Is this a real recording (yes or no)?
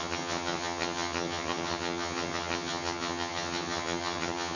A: no